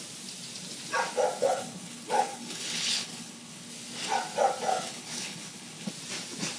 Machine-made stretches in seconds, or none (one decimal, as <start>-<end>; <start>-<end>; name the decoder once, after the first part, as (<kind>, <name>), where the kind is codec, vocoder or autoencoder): 1.4-3.7 (codec, HILCodec); 4.7-5.9